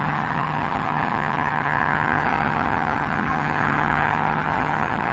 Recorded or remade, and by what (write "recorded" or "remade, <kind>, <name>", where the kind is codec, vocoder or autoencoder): remade, vocoder, HiFi-GAN